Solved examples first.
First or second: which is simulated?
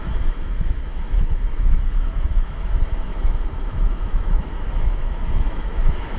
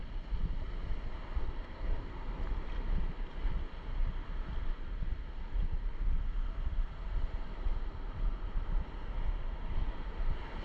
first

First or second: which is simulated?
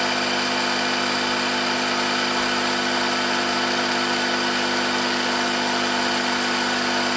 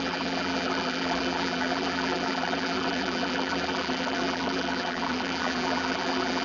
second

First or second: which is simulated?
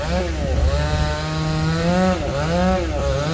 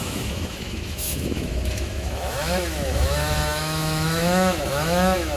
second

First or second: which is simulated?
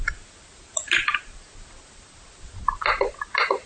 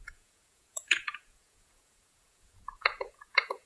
second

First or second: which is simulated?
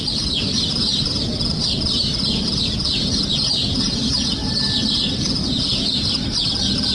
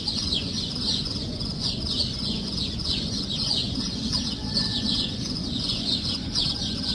second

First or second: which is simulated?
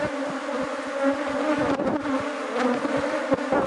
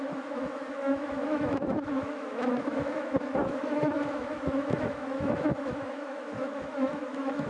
second